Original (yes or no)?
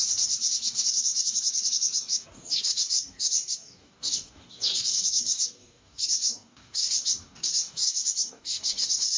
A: no